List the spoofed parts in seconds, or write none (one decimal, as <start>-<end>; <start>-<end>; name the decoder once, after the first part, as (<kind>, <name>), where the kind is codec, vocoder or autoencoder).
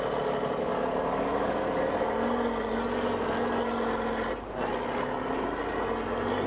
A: none